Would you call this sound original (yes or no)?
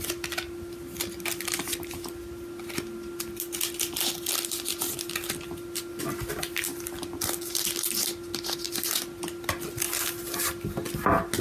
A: yes